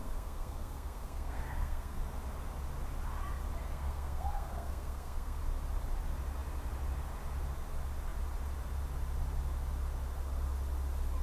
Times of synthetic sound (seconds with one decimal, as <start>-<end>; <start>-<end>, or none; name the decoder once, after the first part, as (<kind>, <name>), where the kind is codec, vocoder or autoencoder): 0.0-2.0 (codec, SNAC); 3.6-5.4